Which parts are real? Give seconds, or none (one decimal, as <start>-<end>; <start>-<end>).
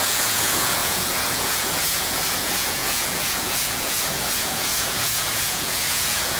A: none